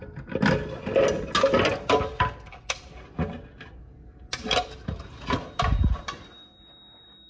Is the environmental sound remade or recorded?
recorded